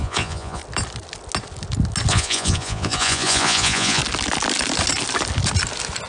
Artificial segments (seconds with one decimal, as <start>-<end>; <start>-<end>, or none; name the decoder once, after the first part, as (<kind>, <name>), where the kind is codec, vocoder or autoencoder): 0.0-0.6 (vocoder, Vocos); 2.1-4.0